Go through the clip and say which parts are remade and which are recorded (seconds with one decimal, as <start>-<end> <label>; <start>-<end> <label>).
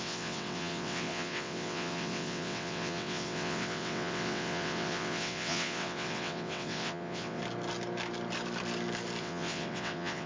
0.0-7.4 remade; 7.4-9.2 recorded; 9.2-10.3 remade